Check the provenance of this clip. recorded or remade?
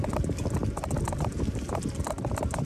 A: recorded